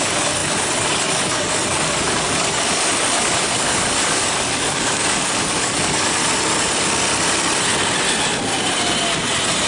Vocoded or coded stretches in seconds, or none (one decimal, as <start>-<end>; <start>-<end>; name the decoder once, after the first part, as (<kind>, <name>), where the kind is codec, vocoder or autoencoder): 0.0-6.2 (codec, DAC)